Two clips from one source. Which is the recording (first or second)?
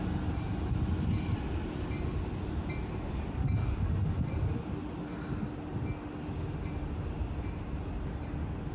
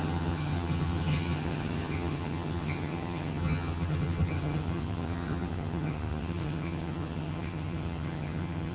first